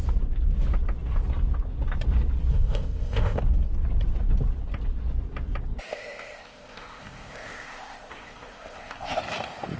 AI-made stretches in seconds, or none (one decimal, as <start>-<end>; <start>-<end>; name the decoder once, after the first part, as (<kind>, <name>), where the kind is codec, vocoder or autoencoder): 2.5-3.4 (codec, ZipCodec); 5.9-9.2